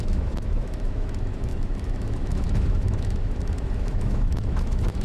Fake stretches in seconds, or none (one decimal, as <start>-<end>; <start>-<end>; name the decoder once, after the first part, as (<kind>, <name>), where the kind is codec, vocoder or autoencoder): 0.0-5.0 (autoencoder, DAC-VAE)

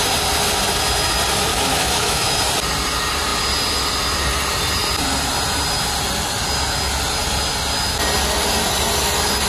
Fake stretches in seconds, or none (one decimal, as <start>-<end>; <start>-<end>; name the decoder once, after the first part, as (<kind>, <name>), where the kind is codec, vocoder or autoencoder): 1.5-2.4 (autoencoder, DAC-VAE)